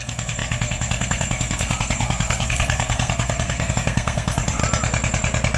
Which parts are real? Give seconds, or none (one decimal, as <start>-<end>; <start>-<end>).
4.6-5.6